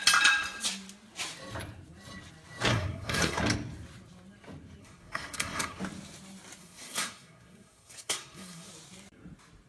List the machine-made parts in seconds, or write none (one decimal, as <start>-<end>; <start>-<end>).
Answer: 2.7-3.4; 4.8-5.8; 6.6-8.7